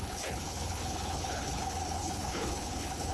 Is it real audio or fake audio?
fake